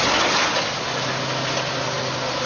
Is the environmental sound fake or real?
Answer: real